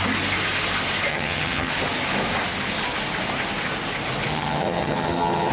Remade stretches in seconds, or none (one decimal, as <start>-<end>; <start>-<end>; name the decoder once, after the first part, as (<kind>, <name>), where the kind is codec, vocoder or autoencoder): 1.1-1.7 (vocoder, HiFi-GAN); 4.3-5.5